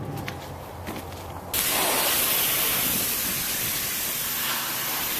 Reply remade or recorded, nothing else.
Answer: recorded